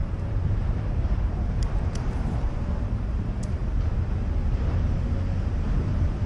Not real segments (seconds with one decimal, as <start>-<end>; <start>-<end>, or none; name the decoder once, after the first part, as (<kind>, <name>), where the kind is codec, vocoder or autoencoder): 0.0-3.6 (vocoder, BigVGAN v2); 5.8-6.3